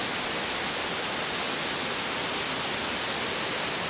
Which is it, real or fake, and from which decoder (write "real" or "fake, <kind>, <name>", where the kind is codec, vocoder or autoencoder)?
real